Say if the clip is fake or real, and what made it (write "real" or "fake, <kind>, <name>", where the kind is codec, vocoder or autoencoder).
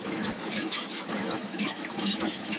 fake, autoencoder, DAC-VAE